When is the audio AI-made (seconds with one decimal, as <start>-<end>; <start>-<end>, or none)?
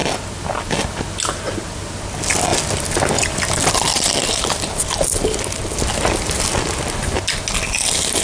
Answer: none